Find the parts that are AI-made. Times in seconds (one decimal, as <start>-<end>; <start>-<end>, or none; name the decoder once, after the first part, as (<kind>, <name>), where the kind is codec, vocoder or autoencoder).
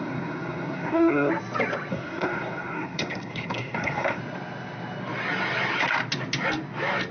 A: 0.0-1.3 (codec, SNAC); 1.9-4.2